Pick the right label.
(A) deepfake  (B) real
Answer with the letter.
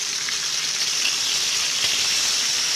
B